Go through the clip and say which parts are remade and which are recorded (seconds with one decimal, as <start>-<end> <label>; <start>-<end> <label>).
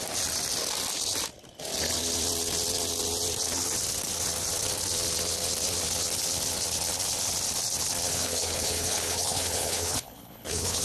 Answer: 0.0-8.1 recorded; 8.1-10.8 remade